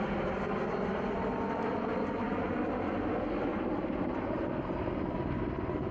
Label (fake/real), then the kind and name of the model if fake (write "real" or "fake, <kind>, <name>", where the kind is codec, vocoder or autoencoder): real